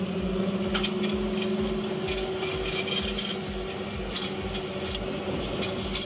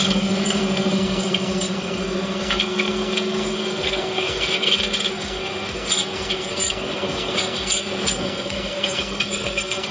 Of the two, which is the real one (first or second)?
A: first